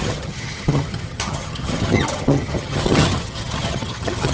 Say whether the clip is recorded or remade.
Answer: remade